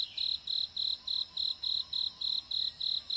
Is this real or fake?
real